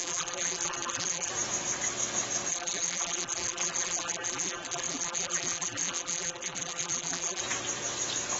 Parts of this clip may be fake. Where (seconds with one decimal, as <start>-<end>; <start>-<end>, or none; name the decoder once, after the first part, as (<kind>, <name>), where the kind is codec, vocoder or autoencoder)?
0.0-1.3 (vocoder, BigVGAN v2); 2.5-7.4